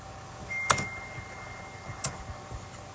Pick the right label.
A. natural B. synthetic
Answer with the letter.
A